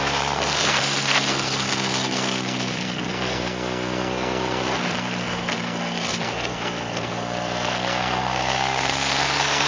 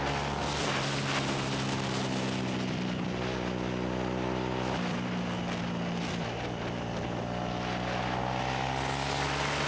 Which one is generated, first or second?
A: first